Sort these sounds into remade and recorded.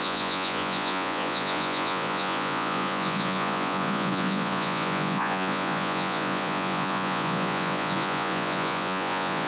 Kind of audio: remade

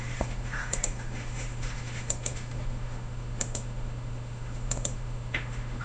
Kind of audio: remade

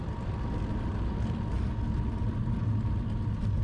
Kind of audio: recorded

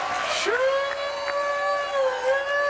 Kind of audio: recorded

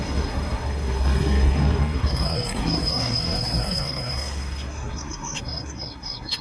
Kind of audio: remade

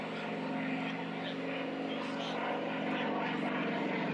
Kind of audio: recorded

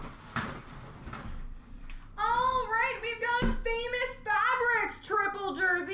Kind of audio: recorded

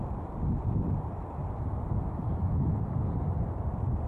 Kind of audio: recorded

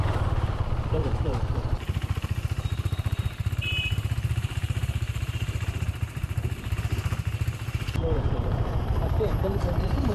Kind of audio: remade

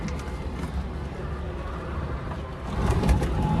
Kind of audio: recorded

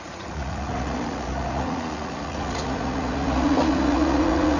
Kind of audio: remade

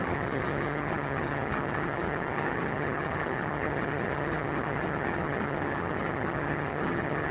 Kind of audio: remade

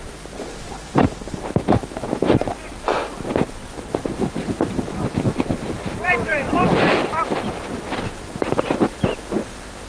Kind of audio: remade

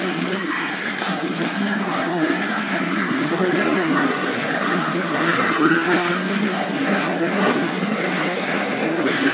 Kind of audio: remade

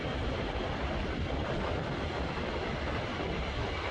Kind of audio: recorded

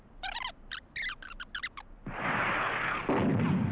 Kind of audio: recorded